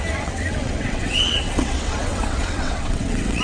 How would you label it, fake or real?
fake